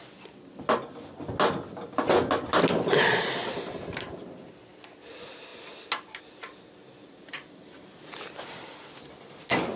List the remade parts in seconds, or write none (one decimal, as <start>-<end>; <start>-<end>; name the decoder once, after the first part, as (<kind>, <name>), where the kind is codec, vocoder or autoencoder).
none